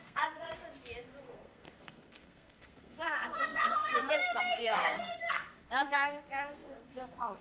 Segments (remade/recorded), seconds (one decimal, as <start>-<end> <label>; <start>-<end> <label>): 0.0-0.6 remade; 0.6-1.2 recorded; 1.2-7.4 remade